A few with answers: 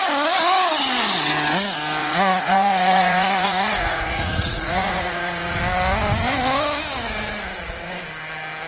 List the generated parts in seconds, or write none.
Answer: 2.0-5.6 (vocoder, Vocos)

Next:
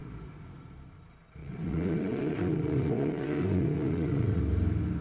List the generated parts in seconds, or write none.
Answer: 1.4-4.4 (vocoder, WaveNeXt)

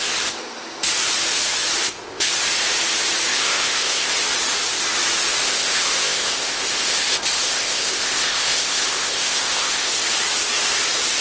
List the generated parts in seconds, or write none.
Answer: 1.8-2.3 (codec, ZipCodec); 3.3-4.1; 5.4-9.9

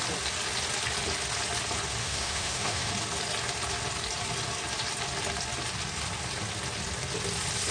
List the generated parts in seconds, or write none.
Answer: 2.0-2.9 (autoencoder, DAC-VAE)

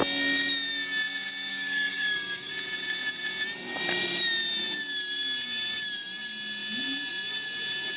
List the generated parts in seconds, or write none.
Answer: 1.5-2.5 (codec, DAC)

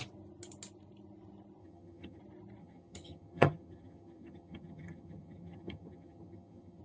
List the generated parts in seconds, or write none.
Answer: 1.6-2.2 (vocoder, HiFi-GAN); 2.6-6.8

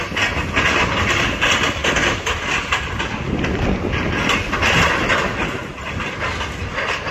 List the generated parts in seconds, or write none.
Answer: 1.8-2.8 (vocoder, BigVGAN v2)